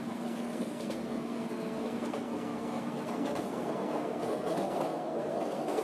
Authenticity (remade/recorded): remade